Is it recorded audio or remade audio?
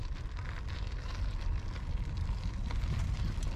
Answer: recorded